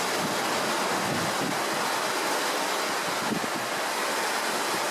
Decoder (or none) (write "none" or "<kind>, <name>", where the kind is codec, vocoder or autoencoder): none